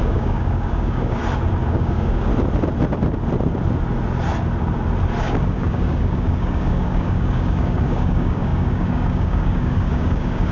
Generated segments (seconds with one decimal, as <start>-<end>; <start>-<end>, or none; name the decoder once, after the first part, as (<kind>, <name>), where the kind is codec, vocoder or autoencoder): 0.0-1.2 (codec, DAC); 1.7-2.3; 5.2-10.5

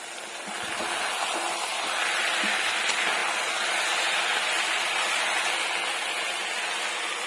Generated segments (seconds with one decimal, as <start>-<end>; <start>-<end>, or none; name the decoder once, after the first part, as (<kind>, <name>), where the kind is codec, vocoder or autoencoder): none

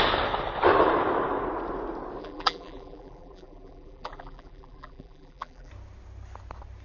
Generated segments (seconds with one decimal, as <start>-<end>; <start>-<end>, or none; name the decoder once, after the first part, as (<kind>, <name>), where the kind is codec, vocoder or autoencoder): 2.2-5.7 (vocoder, BigVGAN v2)

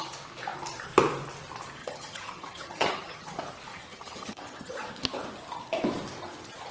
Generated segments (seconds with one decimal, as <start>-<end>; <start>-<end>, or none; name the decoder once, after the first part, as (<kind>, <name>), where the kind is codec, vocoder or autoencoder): 1.8-3.3 (vocoder, HiFi-GAN); 3.7-4.9

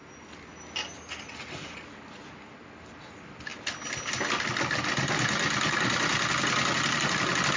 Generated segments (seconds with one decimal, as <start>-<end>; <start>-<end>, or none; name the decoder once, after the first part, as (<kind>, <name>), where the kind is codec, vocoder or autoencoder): none

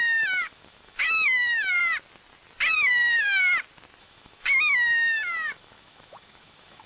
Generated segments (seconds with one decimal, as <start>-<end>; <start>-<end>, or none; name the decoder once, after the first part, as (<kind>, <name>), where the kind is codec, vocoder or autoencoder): 0.0-1.8 (autoencoder, DAC-VAE); 4.0-6.9